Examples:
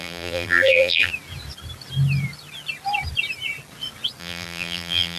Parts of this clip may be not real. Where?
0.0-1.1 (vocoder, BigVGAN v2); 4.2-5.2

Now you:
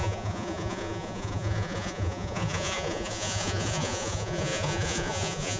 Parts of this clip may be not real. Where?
0.0-5.6 (vocoder, Vocos)

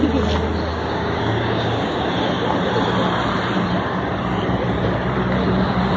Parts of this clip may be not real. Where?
0.7-2.1 (codec, DAC)

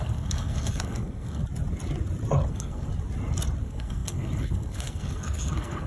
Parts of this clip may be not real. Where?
0.0-1.4 (codec, SNAC); 2.5-2.9; 3.6-5.9

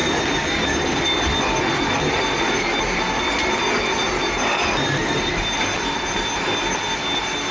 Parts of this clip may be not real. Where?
5.0-6.3 (vocoder, BigVGAN v2)